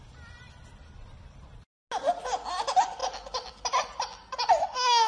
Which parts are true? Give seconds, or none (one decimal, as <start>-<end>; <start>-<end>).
0.0-4.6